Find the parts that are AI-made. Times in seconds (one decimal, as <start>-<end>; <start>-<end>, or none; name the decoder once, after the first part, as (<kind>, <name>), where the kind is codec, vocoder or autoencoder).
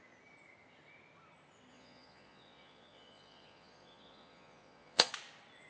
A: 1.7-5.1 (vocoder, Vocos)